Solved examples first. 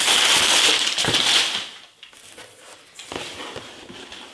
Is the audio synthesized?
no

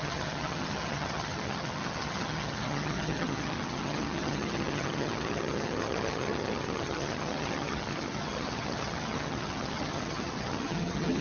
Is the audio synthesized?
yes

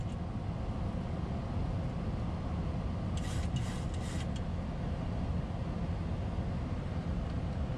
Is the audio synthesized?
no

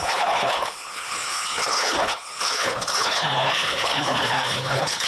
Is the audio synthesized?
yes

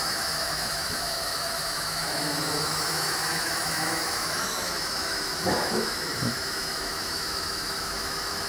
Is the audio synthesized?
yes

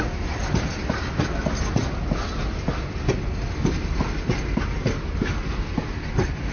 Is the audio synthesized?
no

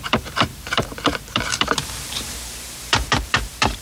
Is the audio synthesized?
yes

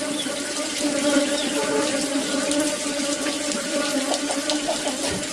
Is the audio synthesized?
no